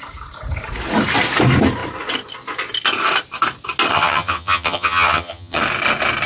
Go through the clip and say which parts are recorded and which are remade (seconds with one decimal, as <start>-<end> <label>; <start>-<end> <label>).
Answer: 0.0-3.9 recorded; 3.9-5.6 remade; 5.6-6.3 recorded